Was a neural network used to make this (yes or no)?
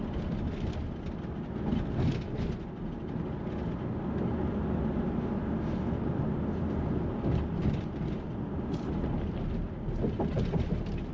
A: no